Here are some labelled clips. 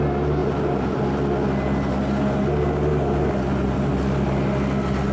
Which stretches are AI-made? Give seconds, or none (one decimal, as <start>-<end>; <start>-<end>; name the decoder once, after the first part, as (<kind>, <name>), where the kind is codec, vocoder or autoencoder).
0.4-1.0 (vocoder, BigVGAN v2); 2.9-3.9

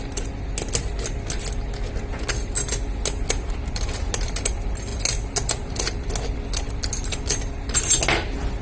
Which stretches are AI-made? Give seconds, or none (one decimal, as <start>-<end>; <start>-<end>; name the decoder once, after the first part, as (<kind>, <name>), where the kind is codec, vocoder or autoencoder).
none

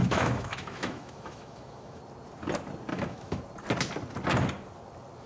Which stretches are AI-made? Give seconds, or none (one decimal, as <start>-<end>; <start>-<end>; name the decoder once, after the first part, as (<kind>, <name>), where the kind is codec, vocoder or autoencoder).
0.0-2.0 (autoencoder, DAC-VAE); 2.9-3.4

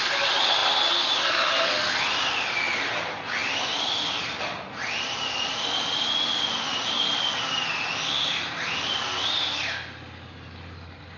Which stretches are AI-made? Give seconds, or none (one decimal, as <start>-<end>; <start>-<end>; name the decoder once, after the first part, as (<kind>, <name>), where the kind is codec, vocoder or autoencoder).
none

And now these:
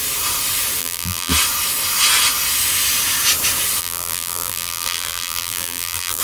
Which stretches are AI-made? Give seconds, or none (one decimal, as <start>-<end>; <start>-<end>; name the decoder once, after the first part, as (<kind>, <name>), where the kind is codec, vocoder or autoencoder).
0.8-1.3 (vocoder, BigVGAN v2); 3.8-6.2